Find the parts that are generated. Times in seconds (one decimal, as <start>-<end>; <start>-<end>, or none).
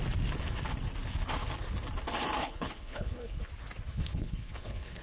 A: 2.4-3.5; 3.9-5.0